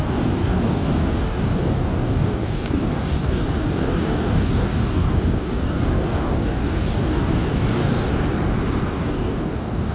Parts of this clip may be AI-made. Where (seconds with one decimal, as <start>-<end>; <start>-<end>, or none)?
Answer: 0.0-8.1; 8.8-9.9